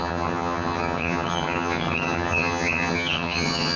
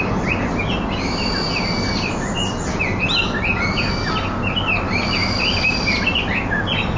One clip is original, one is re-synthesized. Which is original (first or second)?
second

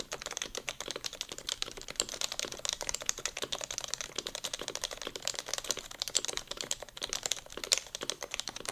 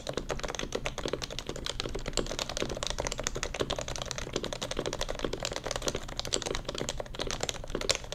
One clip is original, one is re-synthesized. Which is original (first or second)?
second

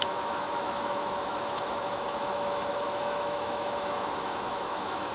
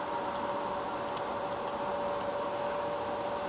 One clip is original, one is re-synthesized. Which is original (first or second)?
second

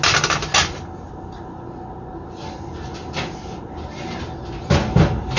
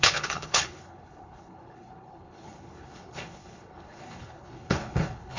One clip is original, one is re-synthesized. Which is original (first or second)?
first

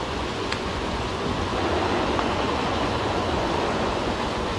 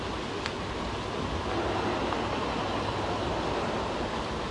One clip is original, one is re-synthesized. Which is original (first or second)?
second